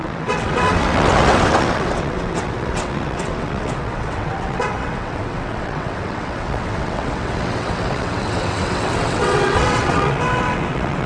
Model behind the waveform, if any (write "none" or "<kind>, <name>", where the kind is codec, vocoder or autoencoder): vocoder, WaveNeXt